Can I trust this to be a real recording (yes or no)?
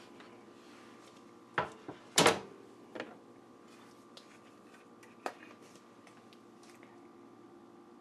yes